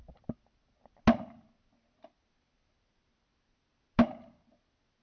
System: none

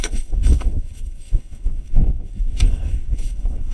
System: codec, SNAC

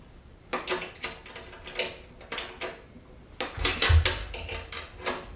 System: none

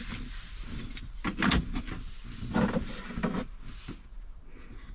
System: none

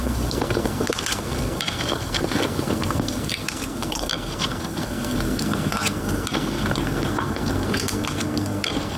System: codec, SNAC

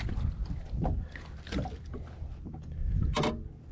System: none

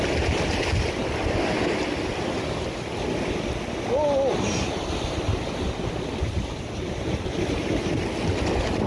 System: none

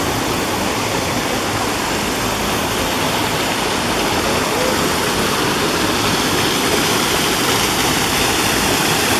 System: none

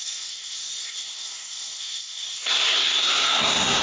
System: codec, SNAC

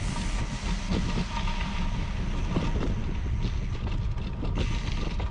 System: none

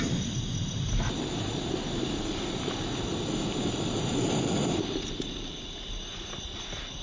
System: none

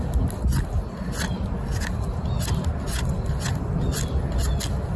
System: none